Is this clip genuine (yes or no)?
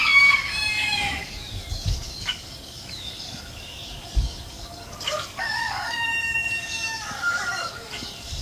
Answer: no